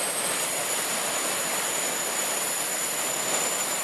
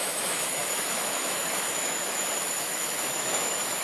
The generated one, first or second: second